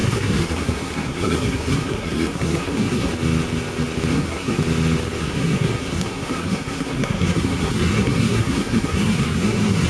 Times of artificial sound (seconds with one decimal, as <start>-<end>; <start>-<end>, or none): 0.0-3.1; 4.1-4.6; 5.2-9.9